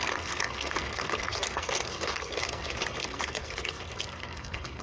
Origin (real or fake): fake